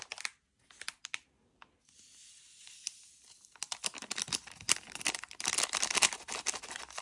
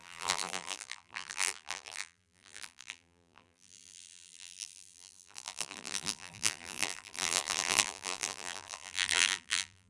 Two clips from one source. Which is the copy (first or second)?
second